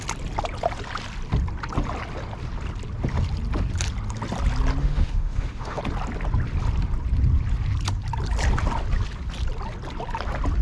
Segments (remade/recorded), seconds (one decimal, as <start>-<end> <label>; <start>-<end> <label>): 0.0-4.8 recorded; 4.8-5.8 remade; 5.8-10.6 recorded